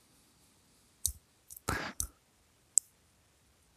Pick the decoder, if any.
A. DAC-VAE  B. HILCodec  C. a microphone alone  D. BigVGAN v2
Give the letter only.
C